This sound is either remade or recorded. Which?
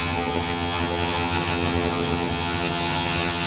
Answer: remade